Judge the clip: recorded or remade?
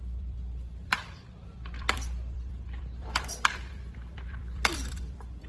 remade